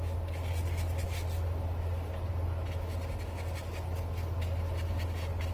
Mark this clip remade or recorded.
recorded